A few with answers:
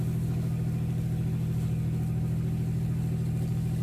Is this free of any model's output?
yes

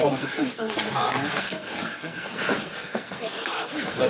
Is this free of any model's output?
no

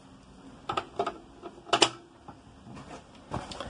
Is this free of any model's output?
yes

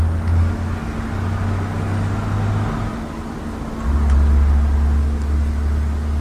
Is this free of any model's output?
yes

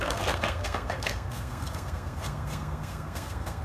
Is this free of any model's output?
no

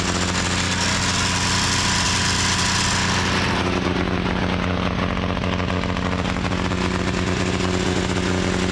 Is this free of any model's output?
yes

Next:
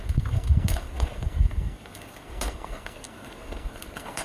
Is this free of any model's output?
no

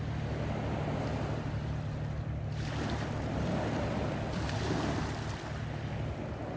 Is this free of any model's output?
yes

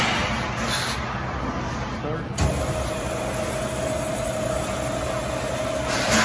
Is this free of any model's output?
yes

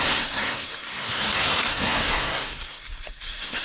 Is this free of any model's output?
no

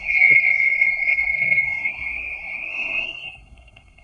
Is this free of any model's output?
no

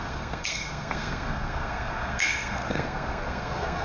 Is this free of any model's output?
no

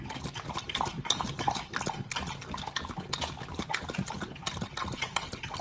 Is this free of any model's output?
yes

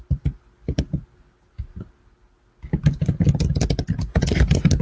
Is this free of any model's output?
yes